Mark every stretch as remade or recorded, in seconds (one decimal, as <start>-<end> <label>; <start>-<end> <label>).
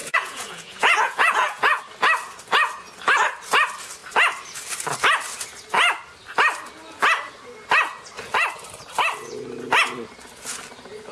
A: 0.0-1.8 remade; 1.8-11.1 recorded